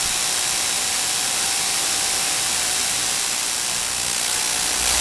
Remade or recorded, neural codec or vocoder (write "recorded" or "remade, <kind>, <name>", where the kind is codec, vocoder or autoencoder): recorded